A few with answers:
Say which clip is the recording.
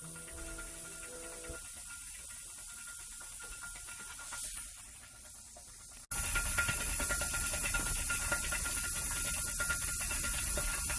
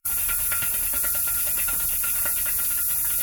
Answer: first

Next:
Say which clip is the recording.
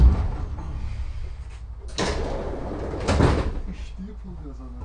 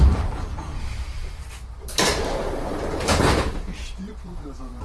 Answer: first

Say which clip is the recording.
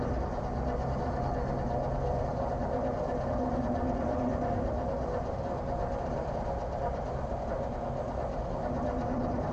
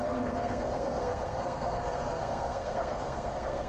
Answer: first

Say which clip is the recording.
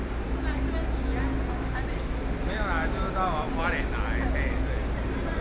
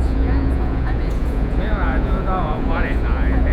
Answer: first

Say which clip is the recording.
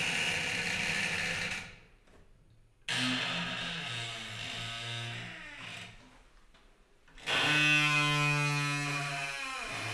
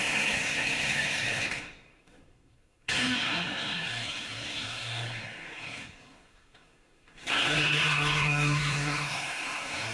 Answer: first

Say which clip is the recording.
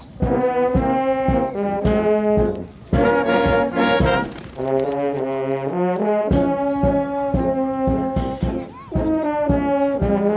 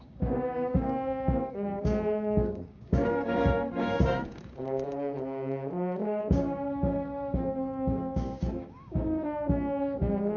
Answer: first